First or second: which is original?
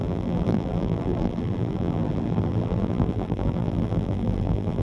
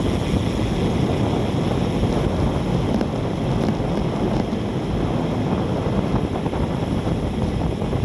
second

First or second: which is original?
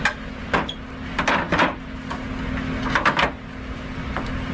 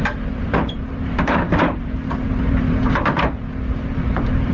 first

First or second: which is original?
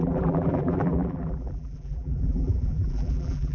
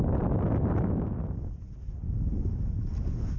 second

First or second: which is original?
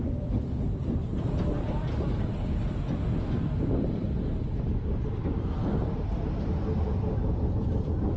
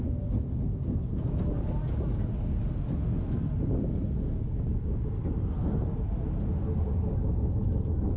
second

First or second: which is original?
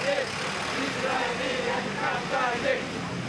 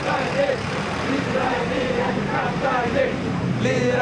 first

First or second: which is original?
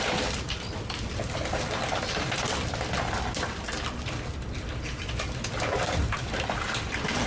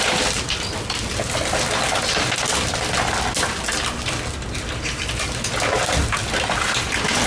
second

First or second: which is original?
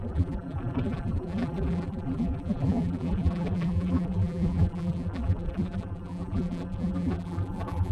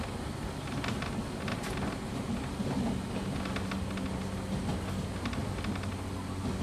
second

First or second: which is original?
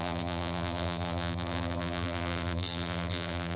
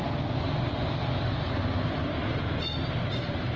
second